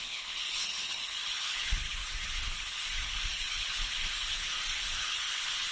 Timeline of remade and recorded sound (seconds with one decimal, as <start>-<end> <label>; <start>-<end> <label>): 0.0-5.7 remade